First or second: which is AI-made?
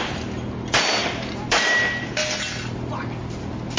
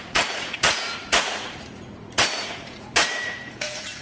second